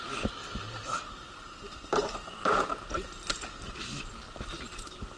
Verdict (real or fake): real